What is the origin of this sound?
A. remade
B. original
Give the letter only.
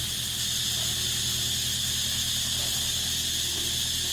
B